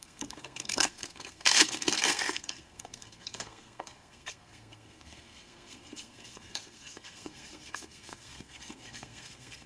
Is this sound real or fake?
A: fake